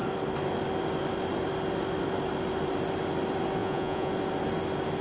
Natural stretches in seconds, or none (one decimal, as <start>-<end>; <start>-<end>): 0.0-3.6; 4.1-5.0